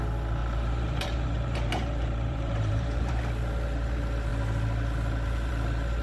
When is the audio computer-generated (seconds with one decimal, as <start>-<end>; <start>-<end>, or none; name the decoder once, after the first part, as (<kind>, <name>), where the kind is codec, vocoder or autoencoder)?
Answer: 0.4-3.2 (vocoder, BigVGAN v2)